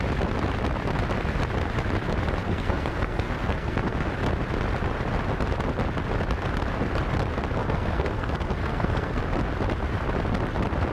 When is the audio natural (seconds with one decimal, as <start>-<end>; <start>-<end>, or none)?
0.0-2.4; 4.1-7.6; 9.2-10.9